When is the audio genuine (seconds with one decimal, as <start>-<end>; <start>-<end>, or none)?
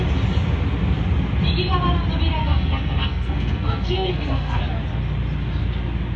0.0-2.4; 4.6-6.2